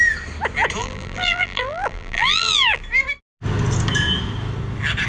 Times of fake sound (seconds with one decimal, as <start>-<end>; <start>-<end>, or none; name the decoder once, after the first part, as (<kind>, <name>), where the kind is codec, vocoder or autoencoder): 0.8-2.8 (vocoder, BigVGAN v2)